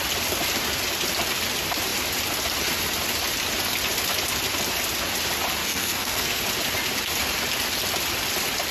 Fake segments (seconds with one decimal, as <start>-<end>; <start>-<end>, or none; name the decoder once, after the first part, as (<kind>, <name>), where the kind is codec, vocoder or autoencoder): 5.6-6.4 (codec, SNAC)

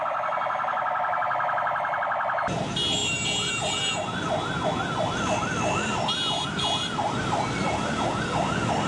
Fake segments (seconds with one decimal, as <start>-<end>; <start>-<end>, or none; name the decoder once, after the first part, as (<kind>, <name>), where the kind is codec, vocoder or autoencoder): none

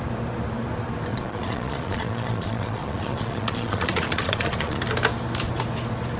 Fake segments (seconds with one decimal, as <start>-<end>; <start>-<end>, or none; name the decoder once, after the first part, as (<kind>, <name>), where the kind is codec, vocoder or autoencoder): 1.1-4.8 (vocoder, Vocos)

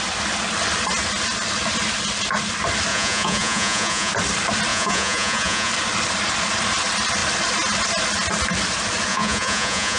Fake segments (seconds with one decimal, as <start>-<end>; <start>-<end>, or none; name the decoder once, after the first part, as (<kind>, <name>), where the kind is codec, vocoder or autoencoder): 2.9-4.1 (vocoder, Vocos); 4.7-5.7; 9.1-10.0